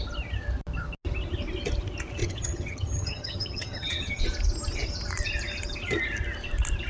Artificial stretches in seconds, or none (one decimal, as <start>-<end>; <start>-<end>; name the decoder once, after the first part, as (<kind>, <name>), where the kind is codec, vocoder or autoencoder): 2.2-4.2 (vocoder, HiFi-GAN)